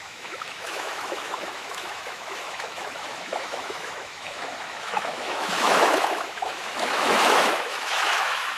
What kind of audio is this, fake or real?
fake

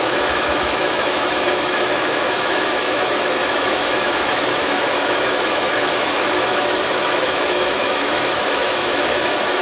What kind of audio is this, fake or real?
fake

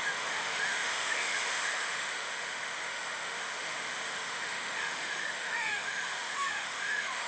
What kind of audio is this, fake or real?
fake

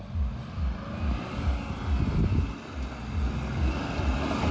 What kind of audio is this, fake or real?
real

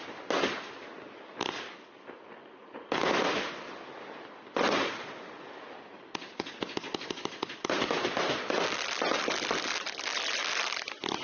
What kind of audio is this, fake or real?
real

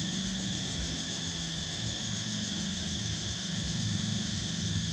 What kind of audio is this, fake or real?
fake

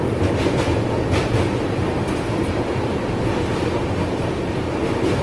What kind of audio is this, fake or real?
real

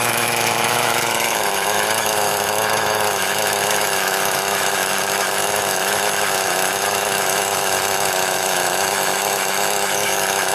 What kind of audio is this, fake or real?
fake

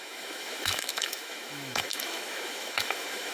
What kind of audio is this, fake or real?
fake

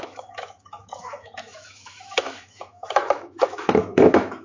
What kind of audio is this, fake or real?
fake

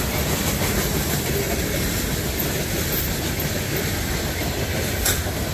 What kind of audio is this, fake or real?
real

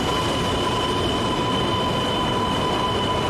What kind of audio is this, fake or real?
real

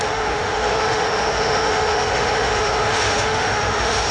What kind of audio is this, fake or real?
fake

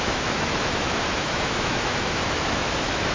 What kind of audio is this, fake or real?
fake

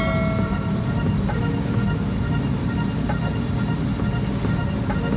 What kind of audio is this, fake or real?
real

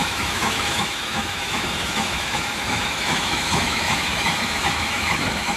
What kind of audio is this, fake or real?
fake